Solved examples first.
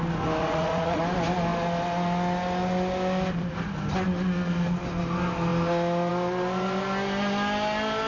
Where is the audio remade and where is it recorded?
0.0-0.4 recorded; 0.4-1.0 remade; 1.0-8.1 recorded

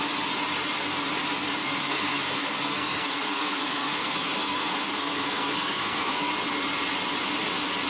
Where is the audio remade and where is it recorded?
0.0-1.6 recorded; 1.6-6.3 remade; 6.3-7.9 recorded

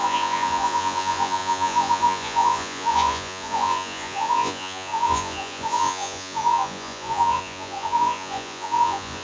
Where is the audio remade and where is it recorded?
0.0-9.2 remade

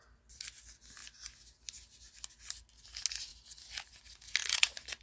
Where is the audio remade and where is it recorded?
0.0-4.4 recorded; 4.4-5.0 remade

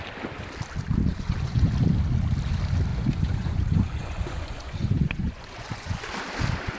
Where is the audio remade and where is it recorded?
0.0-1.1 recorded; 1.1-1.7 remade; 1.7-2.9 recorded; 2.9-6.1 remade; 6.1-6.8 recorded